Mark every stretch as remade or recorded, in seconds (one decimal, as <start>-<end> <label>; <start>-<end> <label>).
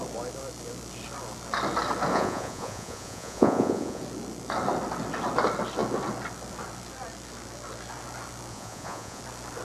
0.0-2.1 recorded; 2.1-4.0 remade; 4.0-8.5 recorded; 8.5-9.2 remade; 9.2-9.6 recorded